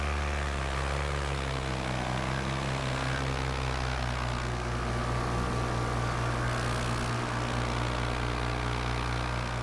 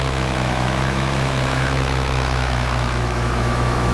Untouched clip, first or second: first